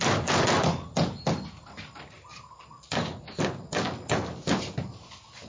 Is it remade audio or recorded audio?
remade